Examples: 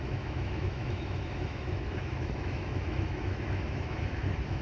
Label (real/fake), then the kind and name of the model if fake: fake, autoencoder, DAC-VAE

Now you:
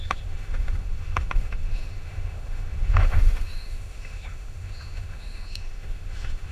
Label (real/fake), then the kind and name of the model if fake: fake, autoencoder, DAC-VAE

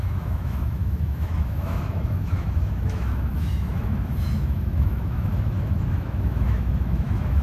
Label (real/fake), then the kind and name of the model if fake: fake, autoencoder, DAC-VAE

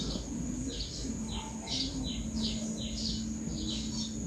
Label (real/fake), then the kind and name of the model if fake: real